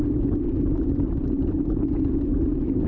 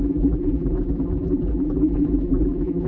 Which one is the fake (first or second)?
second